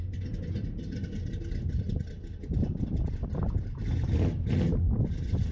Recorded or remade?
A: recorded